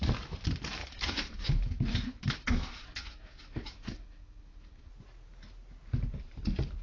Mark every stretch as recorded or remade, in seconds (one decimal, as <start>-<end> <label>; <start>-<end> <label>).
0.0-0.8 recorded; 0.8-4.9 remade; 4.9-6.8 recorded